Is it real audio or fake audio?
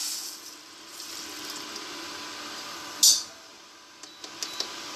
real